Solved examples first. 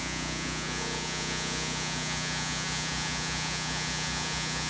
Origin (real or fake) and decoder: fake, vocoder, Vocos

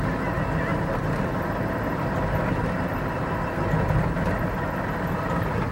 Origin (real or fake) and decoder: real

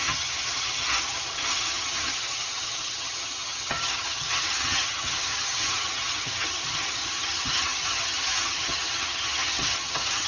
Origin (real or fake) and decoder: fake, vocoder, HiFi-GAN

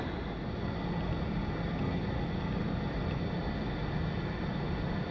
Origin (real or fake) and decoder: real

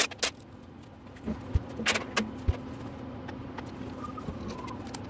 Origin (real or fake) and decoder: real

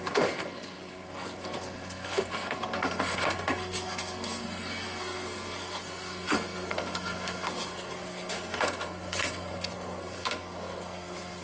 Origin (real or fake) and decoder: fake, codec, SNAC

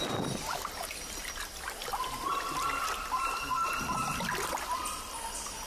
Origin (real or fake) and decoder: real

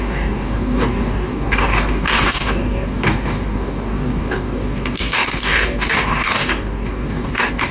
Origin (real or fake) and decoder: fake, codec, DAC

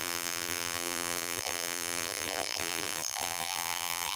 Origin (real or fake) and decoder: fake, vocoder, BigVGAN v2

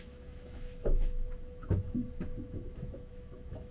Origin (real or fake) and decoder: fake, autoencoder, DAC-VAE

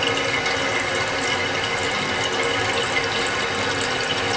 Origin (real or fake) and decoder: real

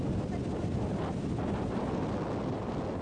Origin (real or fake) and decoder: real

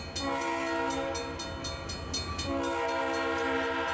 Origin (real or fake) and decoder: real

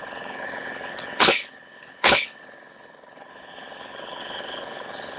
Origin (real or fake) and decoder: fake, codec, HILCodec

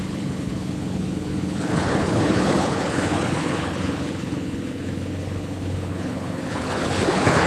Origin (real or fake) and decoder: fake, codec, HILCodec